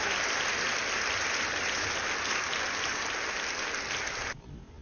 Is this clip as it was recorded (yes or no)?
yes